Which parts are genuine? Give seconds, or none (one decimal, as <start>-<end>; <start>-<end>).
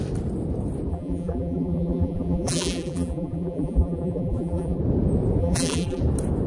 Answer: 0.0-0.9; 4.8-5.4; 6.0-6.5